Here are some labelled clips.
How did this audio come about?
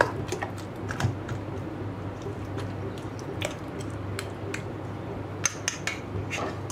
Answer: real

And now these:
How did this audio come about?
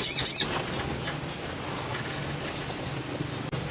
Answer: real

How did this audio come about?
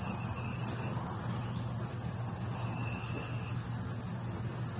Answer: real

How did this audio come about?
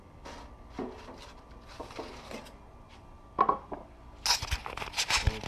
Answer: real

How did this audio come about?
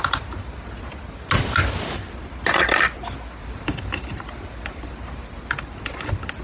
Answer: real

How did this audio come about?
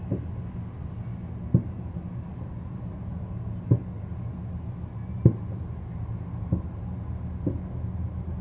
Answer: real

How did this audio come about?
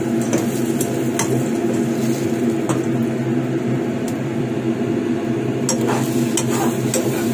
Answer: real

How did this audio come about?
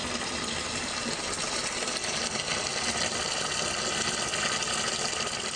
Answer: real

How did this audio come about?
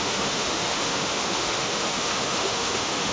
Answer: fake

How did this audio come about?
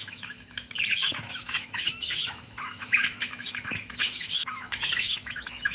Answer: fake